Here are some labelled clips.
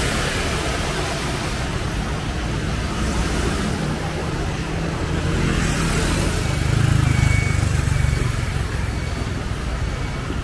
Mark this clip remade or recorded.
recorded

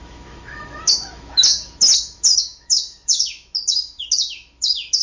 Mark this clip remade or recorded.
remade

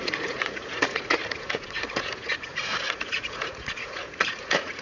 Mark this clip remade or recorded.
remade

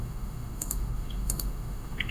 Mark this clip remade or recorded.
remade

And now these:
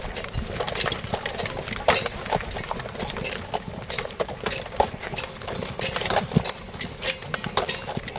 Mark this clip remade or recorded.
recorded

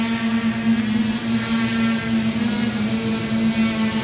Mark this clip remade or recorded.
recorded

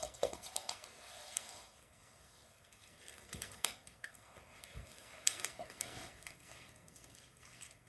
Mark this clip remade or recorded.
remade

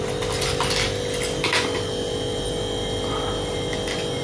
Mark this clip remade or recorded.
recorded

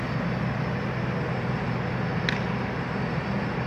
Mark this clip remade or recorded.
recorded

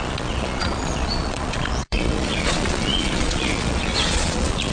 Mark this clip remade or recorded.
remade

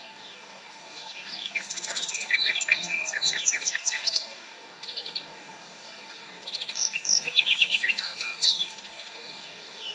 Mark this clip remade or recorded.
remade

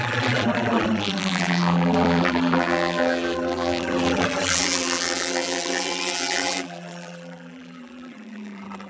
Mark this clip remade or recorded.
remade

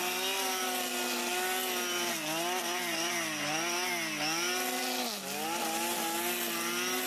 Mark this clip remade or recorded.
recorded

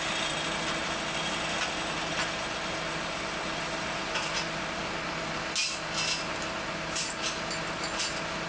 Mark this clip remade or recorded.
recorded